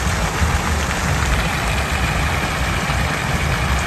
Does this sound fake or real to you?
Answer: real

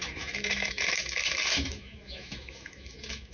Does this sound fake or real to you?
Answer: fake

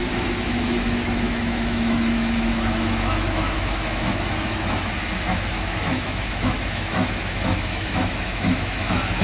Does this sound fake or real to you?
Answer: fake